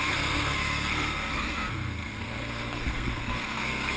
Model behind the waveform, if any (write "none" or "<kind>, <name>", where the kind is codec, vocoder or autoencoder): codec, SNAC